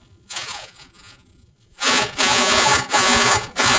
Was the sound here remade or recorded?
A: remade